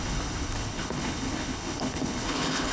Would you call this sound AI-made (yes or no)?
yes